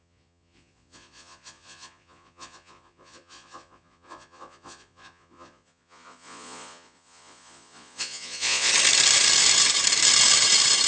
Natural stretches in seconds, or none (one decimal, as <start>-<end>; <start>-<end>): 8.7-10.9